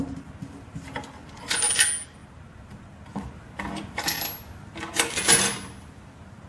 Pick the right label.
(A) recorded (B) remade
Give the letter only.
A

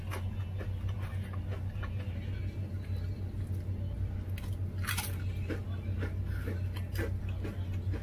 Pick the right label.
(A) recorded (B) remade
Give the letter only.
A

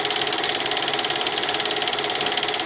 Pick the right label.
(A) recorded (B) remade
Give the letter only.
A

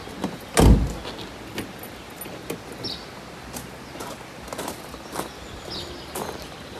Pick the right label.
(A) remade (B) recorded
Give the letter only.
B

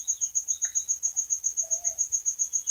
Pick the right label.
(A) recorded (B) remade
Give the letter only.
A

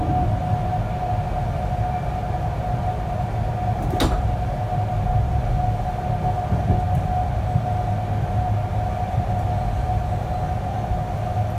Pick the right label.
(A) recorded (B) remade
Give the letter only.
A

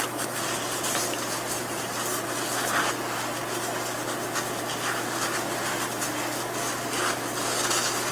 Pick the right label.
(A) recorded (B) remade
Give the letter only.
A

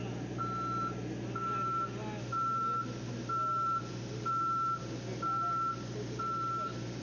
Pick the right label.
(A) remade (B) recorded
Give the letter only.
B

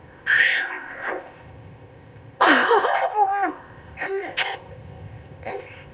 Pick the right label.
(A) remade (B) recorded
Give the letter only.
A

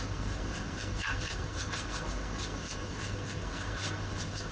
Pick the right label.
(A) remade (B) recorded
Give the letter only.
A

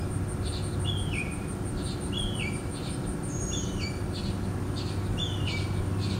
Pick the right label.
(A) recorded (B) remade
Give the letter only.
A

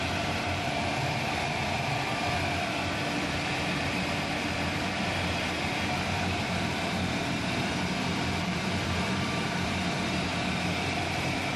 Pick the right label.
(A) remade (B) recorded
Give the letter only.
A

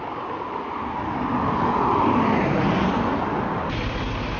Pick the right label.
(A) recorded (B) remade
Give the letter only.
A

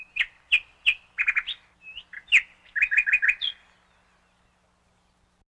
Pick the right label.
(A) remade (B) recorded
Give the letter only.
B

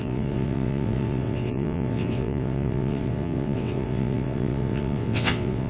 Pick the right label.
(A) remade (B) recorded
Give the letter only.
A